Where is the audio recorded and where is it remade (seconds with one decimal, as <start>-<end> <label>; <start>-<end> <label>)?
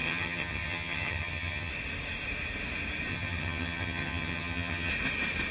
0.0-1.7 remade; 1.7-3.1 recorded; 3.1-4.9 remade; 4.9-5.5 recorded